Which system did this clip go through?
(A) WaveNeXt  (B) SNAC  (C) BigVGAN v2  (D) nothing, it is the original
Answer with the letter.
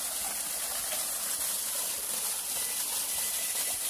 D